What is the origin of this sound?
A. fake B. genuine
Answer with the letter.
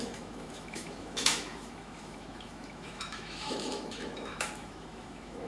A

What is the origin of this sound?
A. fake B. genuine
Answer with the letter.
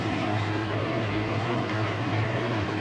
A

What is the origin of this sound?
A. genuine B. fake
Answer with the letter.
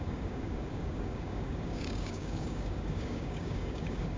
B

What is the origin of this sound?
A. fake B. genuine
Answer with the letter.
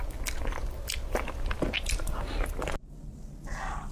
B